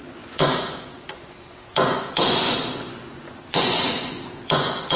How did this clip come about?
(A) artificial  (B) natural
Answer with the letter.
A